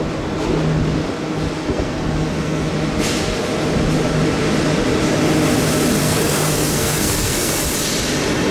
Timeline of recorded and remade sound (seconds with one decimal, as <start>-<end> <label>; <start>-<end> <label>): 0.0-1.6 recorded; 1.6-2.7 remade; 2.7-6.0 recorded; 6.0-7.6 remade; 7.6-8.5 recorded